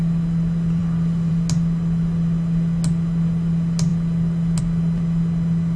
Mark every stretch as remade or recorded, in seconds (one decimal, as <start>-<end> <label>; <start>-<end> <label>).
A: 0.0-5.8 recorded